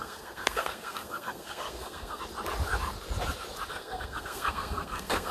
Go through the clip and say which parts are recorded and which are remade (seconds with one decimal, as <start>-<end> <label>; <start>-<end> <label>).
0.0-2.2 remade; 2.2-3.7 recorded; 3.7-5.3 remade